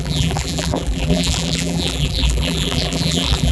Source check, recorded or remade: remade